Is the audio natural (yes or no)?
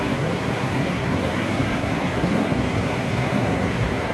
no